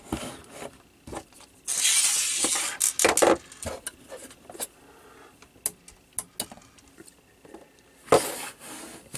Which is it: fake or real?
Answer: real